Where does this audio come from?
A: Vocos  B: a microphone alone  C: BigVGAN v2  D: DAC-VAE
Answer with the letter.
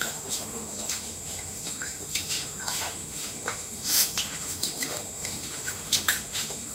D